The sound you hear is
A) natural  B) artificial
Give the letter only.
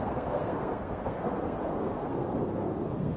B